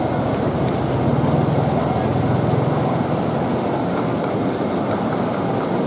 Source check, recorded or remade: recorded